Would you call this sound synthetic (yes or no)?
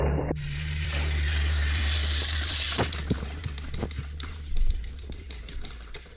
yes